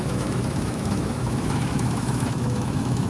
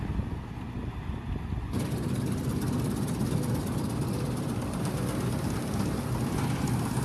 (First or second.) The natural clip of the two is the second